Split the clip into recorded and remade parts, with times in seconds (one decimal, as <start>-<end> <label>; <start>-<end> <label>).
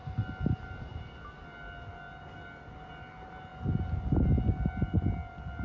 0.0-5.6 recorded